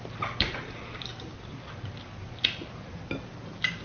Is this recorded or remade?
recorded